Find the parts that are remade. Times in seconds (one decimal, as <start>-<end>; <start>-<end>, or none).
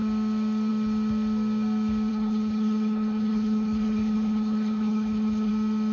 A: 2.1-5.5